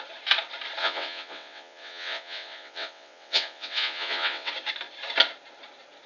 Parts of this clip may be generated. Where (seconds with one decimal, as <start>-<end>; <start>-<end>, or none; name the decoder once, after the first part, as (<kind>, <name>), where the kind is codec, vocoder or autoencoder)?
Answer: 0.8-4.5 (vocoder, WaveNeXt)